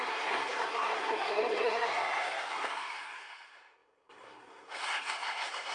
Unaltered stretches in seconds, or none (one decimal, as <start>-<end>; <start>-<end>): none